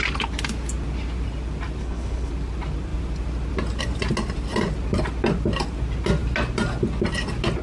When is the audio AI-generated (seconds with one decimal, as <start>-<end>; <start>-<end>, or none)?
1.8-2.3